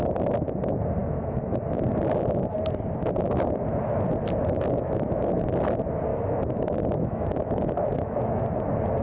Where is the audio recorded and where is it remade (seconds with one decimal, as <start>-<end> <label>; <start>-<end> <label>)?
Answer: 0.0-1.0 recorded; 1.0-1.6 remade; 1.6-4.4 recorded; 4.4-5.4 remade; 5.4-6.1 recorded; 6.1-8.4 remade; 8.4-9.0 recorded